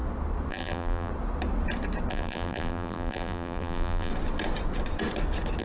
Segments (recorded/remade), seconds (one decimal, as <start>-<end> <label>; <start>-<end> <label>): 0.0-0.5 recorded; 0.5-1.1 remade; 1.1-2.1 recorded; 2.1-4.1 remade; 4.1-5.6 recorded